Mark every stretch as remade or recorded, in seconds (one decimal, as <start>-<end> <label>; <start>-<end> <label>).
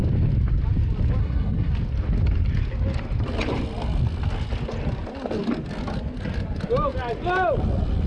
0.0-1.2 recorded; 1.2-1.7 remade; 1.7-8.1 recorded